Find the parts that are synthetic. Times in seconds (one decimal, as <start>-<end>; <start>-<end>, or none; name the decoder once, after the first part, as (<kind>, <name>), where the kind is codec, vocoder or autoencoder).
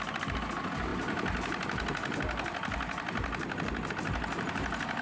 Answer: none